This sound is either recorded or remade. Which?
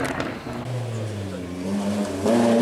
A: recorded